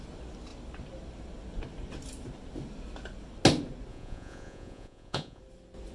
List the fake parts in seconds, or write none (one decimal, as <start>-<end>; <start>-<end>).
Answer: 3.9-5.4